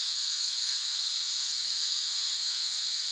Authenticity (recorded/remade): remade